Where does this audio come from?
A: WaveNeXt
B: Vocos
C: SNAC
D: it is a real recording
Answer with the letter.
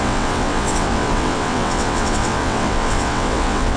A